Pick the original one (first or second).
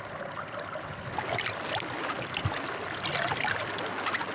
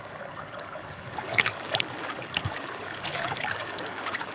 first